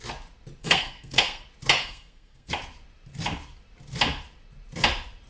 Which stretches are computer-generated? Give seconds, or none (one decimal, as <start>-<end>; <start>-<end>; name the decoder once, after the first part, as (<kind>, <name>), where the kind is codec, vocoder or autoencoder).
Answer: 0.6-1.4 (codec, SNAC); 1.8-2.5